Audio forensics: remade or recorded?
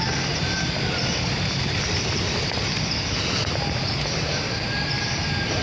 recorded